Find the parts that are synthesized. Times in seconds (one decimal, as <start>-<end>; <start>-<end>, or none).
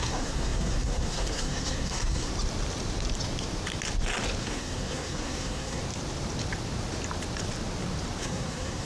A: 0.0-2.3; 4.4-5.8; 8.2-8.9